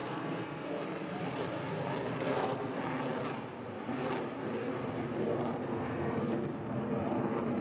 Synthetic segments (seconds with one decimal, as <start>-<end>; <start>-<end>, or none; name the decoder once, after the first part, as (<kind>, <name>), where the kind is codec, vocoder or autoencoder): 0.0-0.7 (codec, SNAC); 2.1-2.8; 5.6-6.3